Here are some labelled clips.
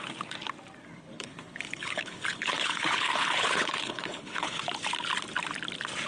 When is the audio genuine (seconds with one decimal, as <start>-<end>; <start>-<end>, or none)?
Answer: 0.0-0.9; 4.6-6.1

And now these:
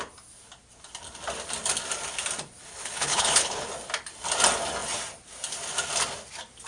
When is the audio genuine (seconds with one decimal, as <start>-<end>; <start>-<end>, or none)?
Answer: 0.0-2.7; 3.7-6.7

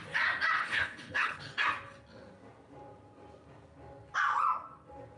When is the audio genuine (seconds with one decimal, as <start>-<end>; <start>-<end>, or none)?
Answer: 0.0-0.6; 1.4-5.2

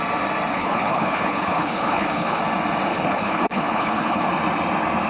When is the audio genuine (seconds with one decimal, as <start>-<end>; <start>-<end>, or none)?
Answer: 0.0-0.5; 2.4-2.9; 4.3-5.1

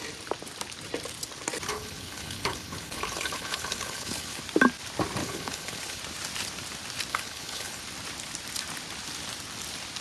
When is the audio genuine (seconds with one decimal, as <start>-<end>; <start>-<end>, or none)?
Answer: 0.0-1.7; 4.4-5.2; 6.0-7.1; 7.8-10.0